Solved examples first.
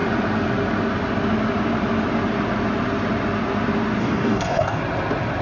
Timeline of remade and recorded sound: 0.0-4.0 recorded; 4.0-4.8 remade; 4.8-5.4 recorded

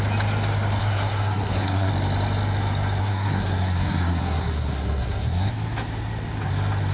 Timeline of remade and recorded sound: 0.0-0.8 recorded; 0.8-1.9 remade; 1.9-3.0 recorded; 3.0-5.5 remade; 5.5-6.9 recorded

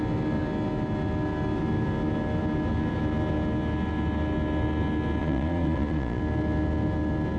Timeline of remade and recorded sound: 0.0-5.2 recorded; 5.2-6.2 remade; 6.2-7.4 recorded

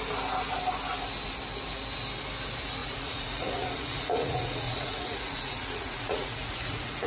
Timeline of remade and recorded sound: 0.0-2.8 recorded; 2.8-7.1 remade